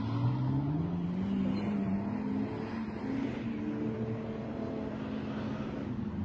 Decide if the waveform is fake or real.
real